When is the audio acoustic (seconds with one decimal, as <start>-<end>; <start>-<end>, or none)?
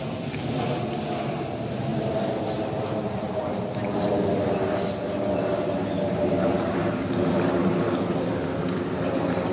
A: 0.0-9.5